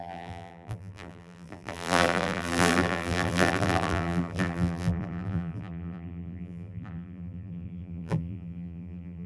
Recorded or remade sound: remade